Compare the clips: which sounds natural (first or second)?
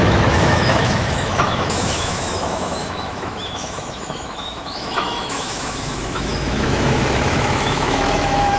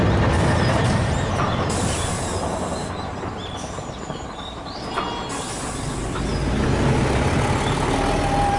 second